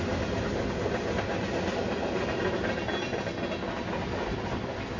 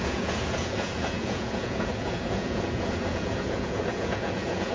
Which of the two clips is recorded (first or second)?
first